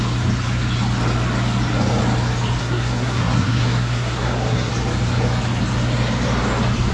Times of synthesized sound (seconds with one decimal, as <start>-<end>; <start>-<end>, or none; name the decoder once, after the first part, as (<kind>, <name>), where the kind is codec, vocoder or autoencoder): 2.6-4.7 (codec, SNAC)

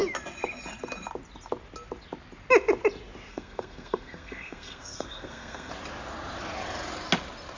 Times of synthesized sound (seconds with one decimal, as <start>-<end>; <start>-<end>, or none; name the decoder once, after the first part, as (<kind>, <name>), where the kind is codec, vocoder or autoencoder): 3.3-5.7 (codec, SNAC)

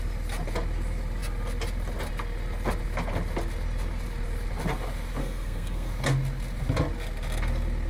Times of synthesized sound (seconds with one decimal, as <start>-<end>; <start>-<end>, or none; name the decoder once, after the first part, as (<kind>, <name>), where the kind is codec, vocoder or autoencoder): 5.2-5.9 (codec, SNAC)

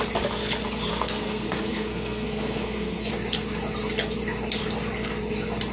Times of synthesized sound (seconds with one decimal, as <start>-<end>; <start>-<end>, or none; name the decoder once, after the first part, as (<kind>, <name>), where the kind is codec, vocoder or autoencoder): 0.9-3.1 (codec, SNAC)

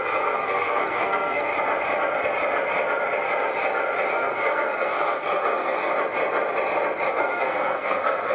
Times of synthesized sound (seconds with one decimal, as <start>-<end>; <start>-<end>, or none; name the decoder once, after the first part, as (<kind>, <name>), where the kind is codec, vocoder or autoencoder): 0.0-1.5 (codec, SNAC); 4.1-5.9; 7.1-8.3